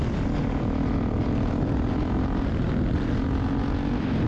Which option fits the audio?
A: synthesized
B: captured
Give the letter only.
B